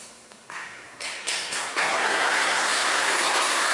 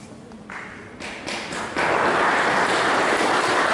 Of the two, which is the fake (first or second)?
first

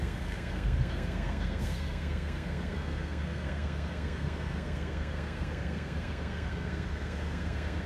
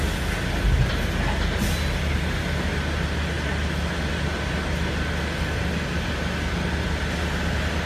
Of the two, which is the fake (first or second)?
first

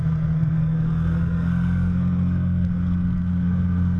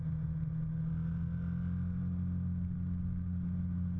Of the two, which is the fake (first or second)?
first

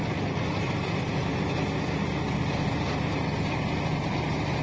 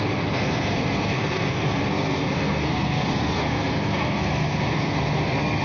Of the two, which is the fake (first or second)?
second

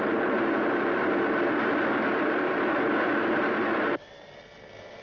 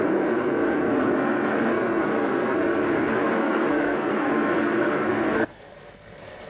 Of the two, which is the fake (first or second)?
second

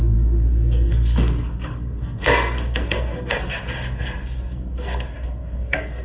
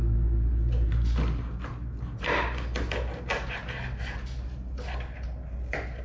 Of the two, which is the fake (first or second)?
first